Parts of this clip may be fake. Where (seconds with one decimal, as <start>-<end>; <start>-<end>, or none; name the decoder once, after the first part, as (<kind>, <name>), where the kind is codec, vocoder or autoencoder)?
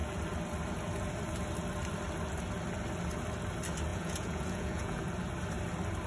3.9-5.0 (vocoder, Vocos)